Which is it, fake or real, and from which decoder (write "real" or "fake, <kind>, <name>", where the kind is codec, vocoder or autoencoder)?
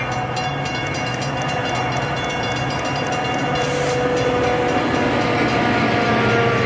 real